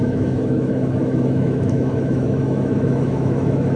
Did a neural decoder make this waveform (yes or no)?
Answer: yes